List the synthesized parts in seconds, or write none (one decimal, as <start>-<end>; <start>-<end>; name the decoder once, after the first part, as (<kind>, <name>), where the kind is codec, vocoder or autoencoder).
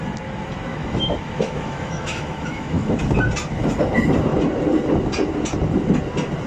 0.7-3.0 (autoencoder, DAC-VAE)